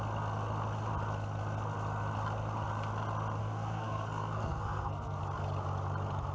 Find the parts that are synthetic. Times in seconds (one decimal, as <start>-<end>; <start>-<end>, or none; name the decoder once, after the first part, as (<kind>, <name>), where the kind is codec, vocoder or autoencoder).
3.4-5.2 (codec, SNAC)